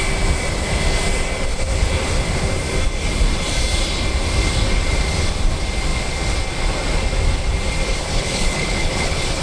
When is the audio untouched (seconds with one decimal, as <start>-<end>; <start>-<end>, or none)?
0.0-8.0